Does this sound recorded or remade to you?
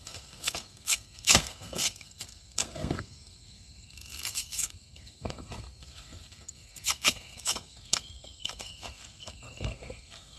remade